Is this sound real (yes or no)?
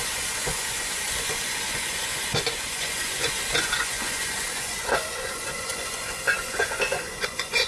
no